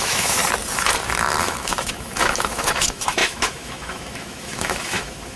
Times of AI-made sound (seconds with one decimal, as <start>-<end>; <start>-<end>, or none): 0.0-0.4; 1.4-5.4